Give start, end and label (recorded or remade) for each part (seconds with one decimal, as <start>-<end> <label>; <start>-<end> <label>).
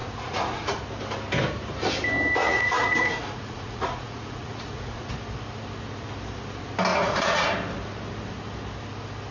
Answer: 0.0-0.8 remade; 0.8-2.4 recorded; 2.4-5.1 remade; 5.1-6.9 recorded; 6.9-7.5 remade; 7.5-9.3 recorded